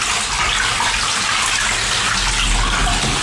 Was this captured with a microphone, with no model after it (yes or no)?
yes